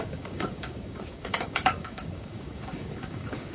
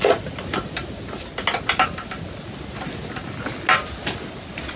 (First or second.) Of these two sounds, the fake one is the first